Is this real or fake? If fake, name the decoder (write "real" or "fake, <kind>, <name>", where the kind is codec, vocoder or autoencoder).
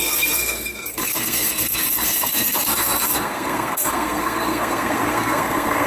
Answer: fake, codec, SNAC